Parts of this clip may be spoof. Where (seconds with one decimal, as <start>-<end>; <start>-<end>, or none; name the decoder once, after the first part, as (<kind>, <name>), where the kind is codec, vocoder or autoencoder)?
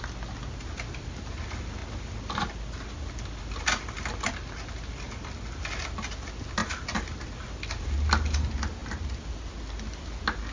none